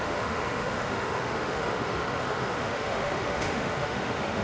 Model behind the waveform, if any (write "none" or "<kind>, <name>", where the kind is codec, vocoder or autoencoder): autoencoder, DAC-VAE